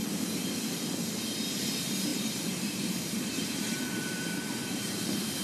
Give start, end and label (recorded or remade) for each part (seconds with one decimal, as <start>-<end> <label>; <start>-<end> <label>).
0.0-0.5 remade; 0.5-2.1 recorded; 2.1-5.4 remade